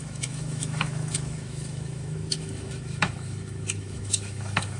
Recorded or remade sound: remade